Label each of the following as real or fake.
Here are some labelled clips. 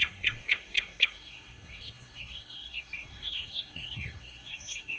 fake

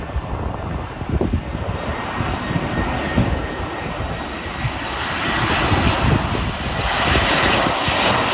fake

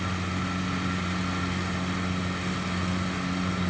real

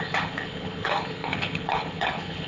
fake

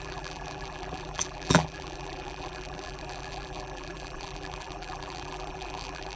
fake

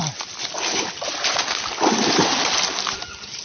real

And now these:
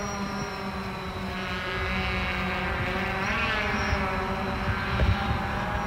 real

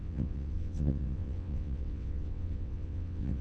fake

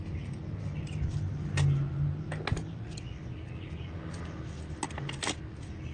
real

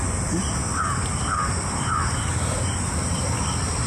real